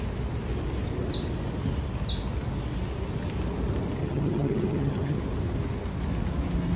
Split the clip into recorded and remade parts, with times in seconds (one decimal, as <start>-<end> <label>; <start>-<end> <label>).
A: 0.0-4.0 recorded; 4.0-5.2 remade; 5.2-6.8 recorded

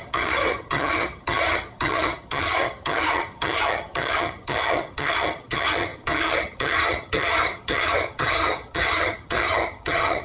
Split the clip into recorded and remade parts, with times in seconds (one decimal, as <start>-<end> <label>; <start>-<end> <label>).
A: 0.0-10.2 remade

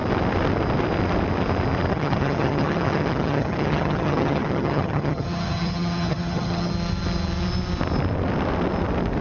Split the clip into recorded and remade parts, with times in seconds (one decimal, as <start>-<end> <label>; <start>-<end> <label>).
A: 0.0-1.9 recorded; 1.9-6.7 remade; 6.7-9.2 recorded

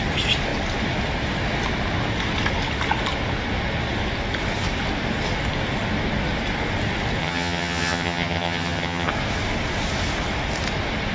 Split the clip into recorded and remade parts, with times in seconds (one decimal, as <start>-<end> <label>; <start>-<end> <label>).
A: 0.0-7.2 recorded; 7.2-9.1 remade; 9.1-11.1 recorded

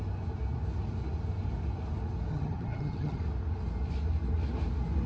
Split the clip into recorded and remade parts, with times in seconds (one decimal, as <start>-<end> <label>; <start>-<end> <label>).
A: 0.0-2.3 recorded; 2.3-3.2 remade; 3.2-5.1 recorded

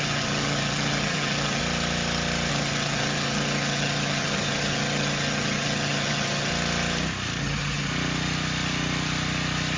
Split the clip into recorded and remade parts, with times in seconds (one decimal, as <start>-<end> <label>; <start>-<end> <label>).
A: 0.0-1.6 remade; 1.6-2.5 recorded; 2.5-6.5 remade; 6.5-7.4 recorded; 7.4-7.9 remade; 7.9-9.8 recorded

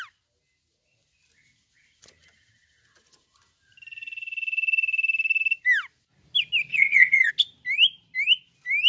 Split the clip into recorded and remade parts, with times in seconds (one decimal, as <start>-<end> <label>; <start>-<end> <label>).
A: 0.0-6.7 recorded; 6.7-7.3 remade; 7.3-8.9 recorded